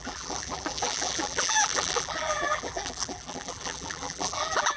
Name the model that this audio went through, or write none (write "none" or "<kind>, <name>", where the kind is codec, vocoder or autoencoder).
vocoder, BigVGAN v2